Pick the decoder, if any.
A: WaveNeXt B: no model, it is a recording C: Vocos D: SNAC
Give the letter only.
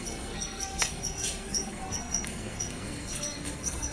D